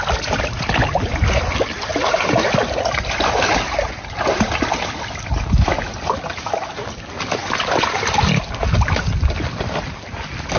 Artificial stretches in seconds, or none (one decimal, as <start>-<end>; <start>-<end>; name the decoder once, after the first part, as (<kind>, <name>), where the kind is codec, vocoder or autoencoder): none